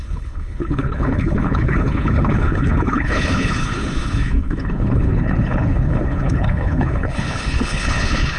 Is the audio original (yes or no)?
no